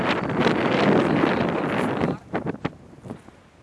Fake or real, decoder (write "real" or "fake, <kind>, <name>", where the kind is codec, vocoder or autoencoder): real